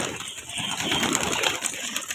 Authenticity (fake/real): real